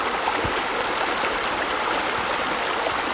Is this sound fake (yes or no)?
no